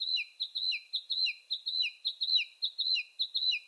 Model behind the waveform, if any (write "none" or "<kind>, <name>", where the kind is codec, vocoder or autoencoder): none